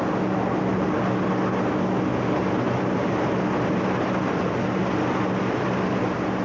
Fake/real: real